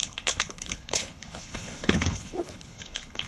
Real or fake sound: fake